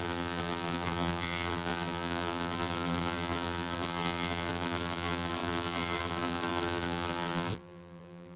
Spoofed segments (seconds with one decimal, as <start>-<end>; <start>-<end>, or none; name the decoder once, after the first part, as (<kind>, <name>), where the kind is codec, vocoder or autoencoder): 0.0-8.4 (vocoder, BigVGAN v2)